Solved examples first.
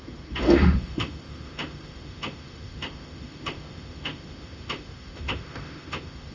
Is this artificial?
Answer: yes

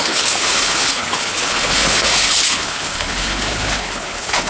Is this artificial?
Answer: yes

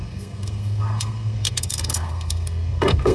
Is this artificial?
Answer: yes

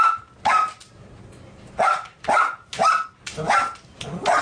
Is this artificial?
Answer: no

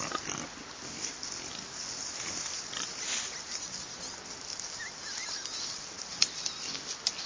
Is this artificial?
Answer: no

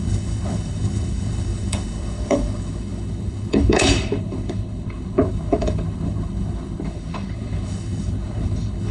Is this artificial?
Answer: yes